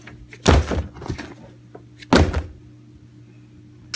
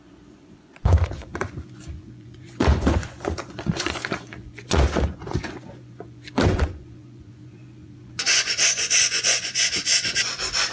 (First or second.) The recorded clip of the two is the first